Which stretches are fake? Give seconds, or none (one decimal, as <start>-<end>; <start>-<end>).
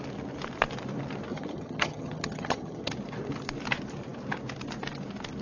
1.3-2.9